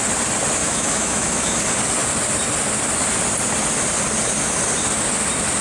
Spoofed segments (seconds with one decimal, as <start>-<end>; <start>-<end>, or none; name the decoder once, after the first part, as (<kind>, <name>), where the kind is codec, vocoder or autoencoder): 0.6-1.6 (autoencoder, DAC-VAE)